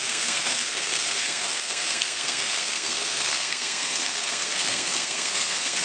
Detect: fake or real fake